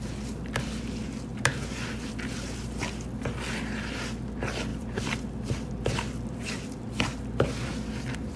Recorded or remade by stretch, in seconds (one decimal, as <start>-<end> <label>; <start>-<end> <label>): 0.0-1.3 recorded; 1.3-2.1 remade; 2.1-4.7 recorded; 4.7-5.7 remade; 5.7-8.4 recorded